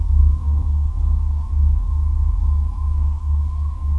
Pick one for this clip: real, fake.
fake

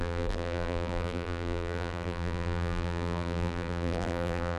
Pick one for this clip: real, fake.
fake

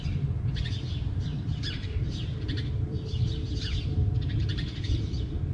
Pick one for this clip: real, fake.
fake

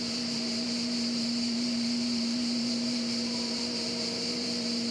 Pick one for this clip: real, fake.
fake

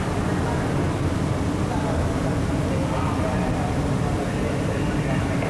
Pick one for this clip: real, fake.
real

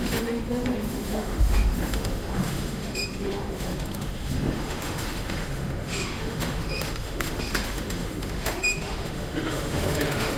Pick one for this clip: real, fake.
fake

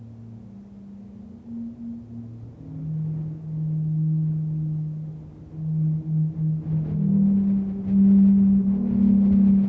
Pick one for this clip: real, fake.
real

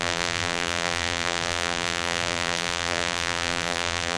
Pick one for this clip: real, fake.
fake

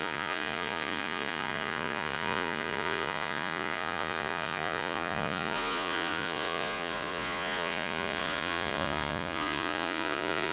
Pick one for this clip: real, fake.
fake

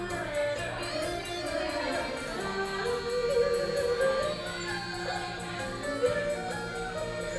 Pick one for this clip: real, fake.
real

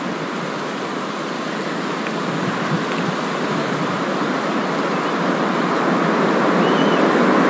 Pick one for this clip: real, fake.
real